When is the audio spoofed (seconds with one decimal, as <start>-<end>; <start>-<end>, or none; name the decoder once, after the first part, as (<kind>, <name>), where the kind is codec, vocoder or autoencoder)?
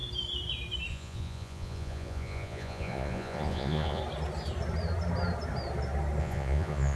0.9-4.0 (vocoder, Vocos); 6.2-7.0